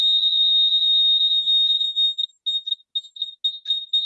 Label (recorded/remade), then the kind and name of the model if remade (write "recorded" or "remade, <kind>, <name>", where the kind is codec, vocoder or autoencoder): recorded